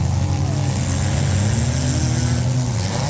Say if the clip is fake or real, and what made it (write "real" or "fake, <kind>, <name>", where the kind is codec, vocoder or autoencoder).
real